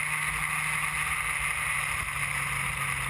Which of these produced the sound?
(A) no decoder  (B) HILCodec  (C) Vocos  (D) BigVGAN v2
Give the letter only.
A